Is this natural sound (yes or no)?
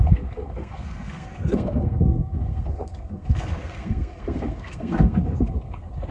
no